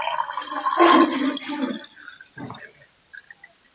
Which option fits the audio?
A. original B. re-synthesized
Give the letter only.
A